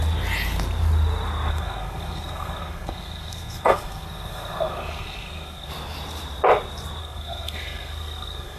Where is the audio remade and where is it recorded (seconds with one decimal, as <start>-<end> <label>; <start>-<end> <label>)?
0.0-1.5 recorded; 1.5-5.7 remade; 5.7-7.0 recorded; 7.0-8.6 remade

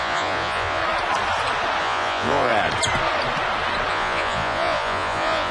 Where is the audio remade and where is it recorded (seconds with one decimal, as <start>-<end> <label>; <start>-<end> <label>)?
0.0-0.8 remade; 0.8-1.8 recorded; 1.8-2.5 remade; 2.5-3.9 recorded; 3.9-5.5 remade